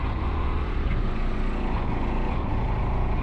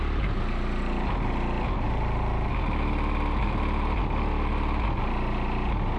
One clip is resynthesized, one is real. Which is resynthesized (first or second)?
first